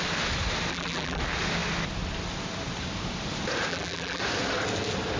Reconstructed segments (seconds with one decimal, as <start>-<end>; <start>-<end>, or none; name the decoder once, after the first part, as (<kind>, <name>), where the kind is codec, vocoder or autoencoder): 0.7-1.2 (vocoder, BigVGAN v2); 3.7-4.2